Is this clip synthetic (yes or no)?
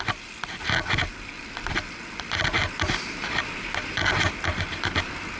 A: no